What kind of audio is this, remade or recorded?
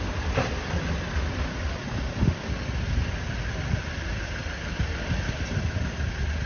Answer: recorded